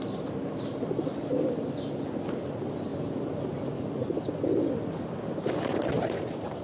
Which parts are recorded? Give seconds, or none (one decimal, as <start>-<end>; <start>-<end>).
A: 0.0-6.6